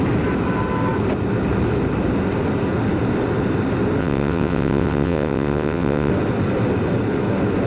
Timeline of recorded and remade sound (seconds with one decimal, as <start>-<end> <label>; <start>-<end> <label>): 0.0-4.0 recorded; 4.0-6.1 remade; 6.1-7.7 recorded